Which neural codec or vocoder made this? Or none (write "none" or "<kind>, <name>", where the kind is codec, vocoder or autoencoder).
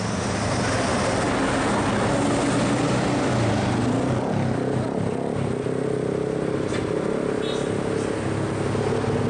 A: none